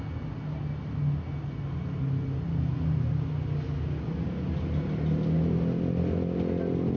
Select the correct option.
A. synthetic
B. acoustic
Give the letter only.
B